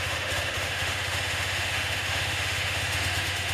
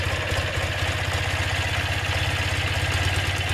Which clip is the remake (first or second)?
first